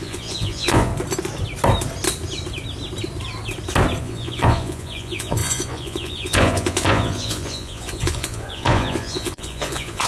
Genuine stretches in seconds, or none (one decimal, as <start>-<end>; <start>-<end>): 0.9-4.0